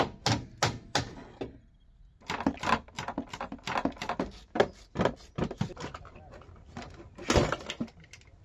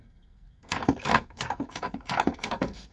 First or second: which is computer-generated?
second